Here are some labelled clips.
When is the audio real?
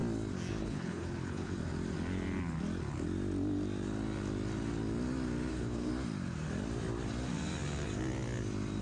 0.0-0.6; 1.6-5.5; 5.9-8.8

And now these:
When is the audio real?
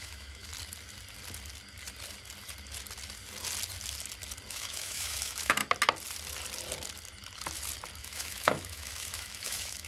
0.5-4.5; 5.6-8.0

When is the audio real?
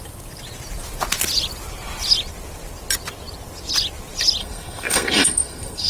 0.0-4.4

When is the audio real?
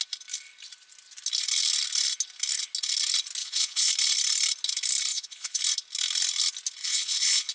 0.0-3.4; 3.9-5.1; 5.6-6.8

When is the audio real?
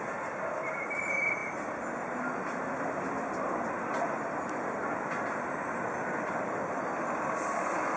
0.0-8.0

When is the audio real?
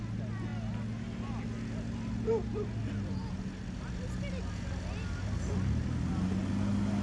0.0-7.0